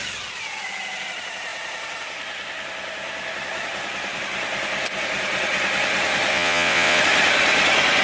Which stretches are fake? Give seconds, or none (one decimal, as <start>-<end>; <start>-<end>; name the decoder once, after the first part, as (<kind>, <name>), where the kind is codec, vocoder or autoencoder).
6.3-7.0 (vocoder, WaveNeXt)